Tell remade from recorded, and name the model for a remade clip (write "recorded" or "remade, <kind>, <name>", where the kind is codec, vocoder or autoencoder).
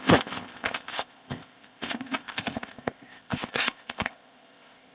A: remade, codec, ZipCodec